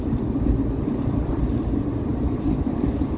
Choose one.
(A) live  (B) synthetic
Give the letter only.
A